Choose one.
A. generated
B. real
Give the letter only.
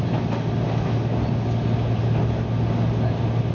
B